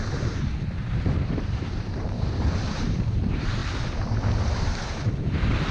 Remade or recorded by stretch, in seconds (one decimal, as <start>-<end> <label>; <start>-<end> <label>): 0.0-3.6 remade; 3.6-4.3 recorded; 4.3-5.7 remade

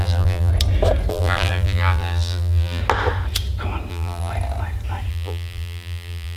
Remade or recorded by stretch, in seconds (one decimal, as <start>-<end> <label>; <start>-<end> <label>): 0.0-0.5 remade; 0.5-1.1 recorded; 1.1-2.8 remade; 2.8-3.9 recorded; 3.9-4.3 remade; 4.3-5.1 recorded; 5.1-6.4 remade

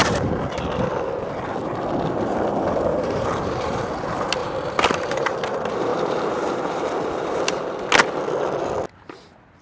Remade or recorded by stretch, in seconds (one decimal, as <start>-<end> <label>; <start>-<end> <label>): 0.0-0.5 remade; 0.5-2.9 recorded; 2.9-3.9 remade; 3.9-4.4 recorded; 4.4-5.4 remade; 5.4-5.9 recorded; 5.9-7.7 remade; 7.7-9.6 recorded

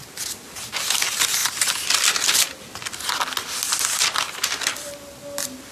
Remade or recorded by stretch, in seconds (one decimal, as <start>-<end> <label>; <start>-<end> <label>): 0.0-5.7 recorded

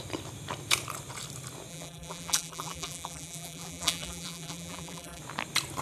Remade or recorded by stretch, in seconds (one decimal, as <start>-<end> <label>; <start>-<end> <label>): 0.0-1.7 recorded; 1.7-5.2 remade; 5.2-5.8 recorded

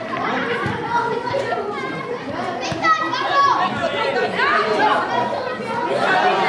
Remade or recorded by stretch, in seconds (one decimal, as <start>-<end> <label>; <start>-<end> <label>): 0.0-1.1 recorded; 1.1-5.0 remade; 5.0-6.5 recorded

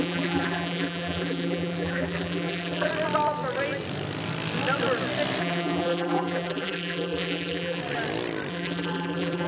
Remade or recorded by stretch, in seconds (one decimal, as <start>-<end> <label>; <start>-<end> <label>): 0.0-2.9 remade; 2.9-5.4 recorded; 5.4-7.8 remade; 7.8-8.5 recorded; 8.5-9.5 remade